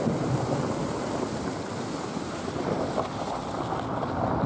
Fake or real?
real